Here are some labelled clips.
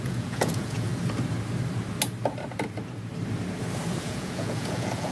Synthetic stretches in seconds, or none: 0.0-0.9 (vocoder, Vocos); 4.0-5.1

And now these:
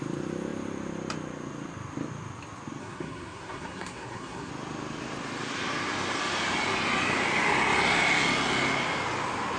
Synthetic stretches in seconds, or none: 2.8-4.5 (codec, SNAC)

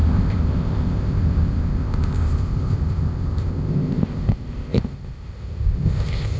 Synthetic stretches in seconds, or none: 0.0-6.4 (codec, ZipCodec)

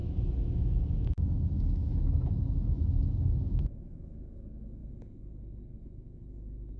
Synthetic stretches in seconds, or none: 0.0-4.8 (autoencoder, DAC-VAE); 5.8-6.8

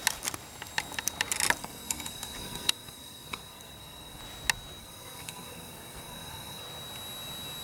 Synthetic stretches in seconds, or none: 1.6-4.2 (codec, SNAC); 4.8-6.6

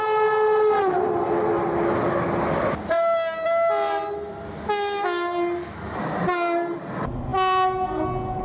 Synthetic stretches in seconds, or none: none

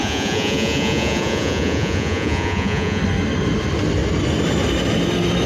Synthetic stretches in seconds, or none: 0.0-3.0 (vocoder, Vocos)

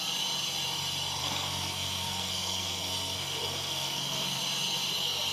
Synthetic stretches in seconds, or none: 1.2-4.4 (codec, SNAC)